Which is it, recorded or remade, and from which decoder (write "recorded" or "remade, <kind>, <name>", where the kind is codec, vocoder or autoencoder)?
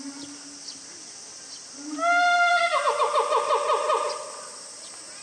recorded